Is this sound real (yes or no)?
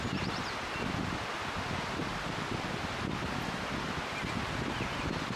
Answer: yes